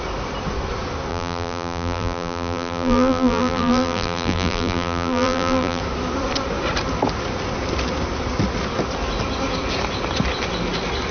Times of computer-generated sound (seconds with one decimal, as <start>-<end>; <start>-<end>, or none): 1.1-5.8